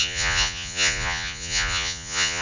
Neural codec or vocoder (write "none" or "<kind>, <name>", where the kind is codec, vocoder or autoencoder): vocoder, Vocos